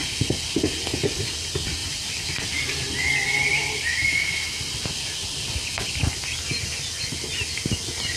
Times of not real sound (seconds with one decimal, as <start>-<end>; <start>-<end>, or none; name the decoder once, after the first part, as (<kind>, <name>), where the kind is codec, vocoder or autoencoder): 3.9-4.6 (autoencoder, DAC-VAE)